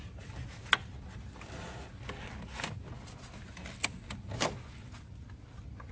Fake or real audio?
real